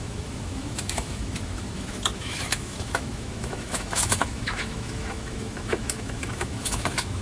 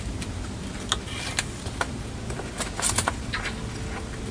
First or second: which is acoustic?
second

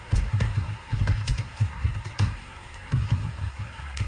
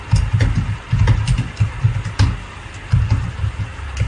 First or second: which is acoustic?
second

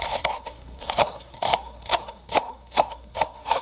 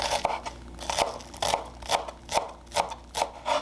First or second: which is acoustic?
second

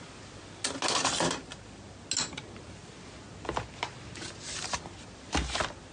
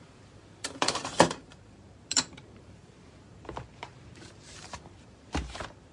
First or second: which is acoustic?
first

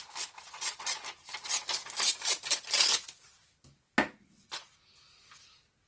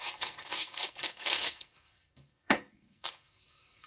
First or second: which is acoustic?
first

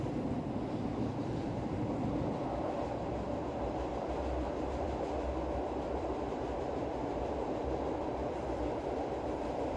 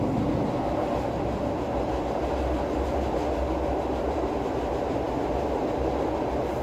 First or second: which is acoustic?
second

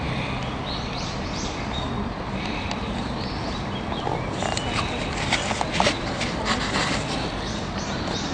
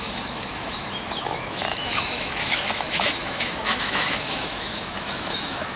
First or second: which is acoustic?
first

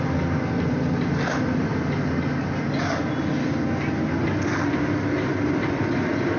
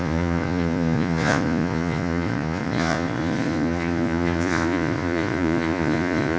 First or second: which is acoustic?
first